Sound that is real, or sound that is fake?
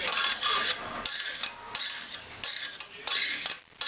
real